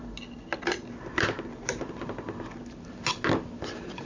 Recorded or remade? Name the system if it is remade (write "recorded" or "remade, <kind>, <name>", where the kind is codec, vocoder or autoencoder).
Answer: recorded